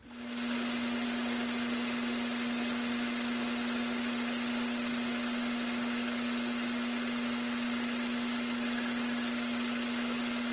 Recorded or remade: recorded